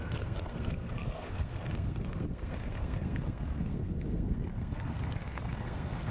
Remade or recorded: remade